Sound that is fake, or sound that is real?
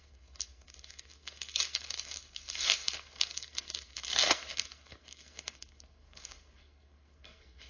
fake